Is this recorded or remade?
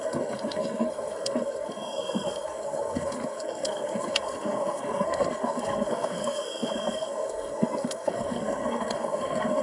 remade